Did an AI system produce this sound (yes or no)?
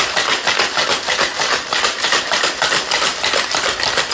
no